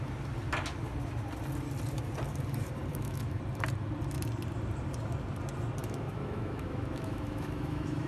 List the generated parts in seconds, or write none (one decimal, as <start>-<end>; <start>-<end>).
2.9-3.4; 5.8-8.1